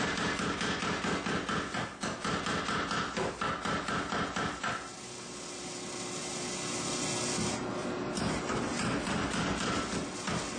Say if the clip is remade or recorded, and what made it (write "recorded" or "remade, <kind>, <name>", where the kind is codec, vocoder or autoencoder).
recorded